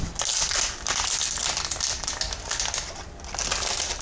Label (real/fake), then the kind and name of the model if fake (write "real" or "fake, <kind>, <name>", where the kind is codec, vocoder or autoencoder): real